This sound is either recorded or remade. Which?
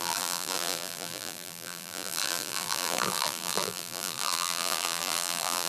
remade